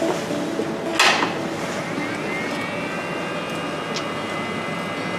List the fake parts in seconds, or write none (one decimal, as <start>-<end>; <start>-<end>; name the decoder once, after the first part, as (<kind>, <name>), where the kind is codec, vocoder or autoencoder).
none